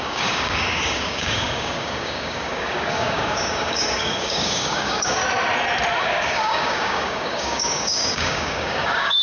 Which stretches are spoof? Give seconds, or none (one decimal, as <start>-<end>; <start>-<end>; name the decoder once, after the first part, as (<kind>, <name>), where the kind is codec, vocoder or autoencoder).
0.0-5.2 (codec, DAC); 6.0-9.2